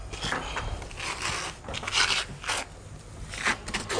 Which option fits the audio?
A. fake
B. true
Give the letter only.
B